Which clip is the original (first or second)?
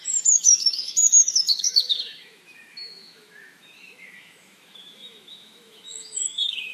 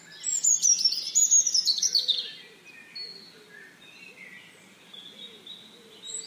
second